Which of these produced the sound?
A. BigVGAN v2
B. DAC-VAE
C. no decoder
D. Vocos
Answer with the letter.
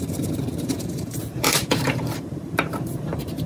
A